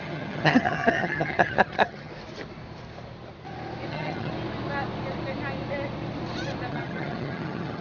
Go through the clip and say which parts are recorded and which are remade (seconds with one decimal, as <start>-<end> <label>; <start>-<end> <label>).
0.0-2.1 remade; 2.1-3.9 recorded; 3.9-4.3 remade; 4.3-6.7 recorded; 6.7-7.8 remade